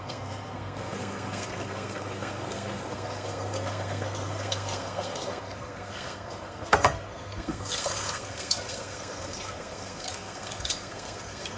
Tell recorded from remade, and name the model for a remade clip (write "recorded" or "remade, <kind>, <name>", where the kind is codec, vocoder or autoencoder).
remade, codec, SNAC